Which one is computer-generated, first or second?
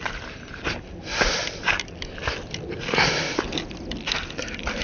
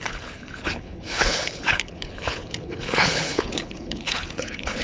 second